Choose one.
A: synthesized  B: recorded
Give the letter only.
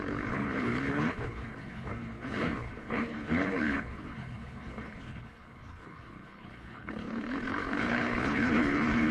A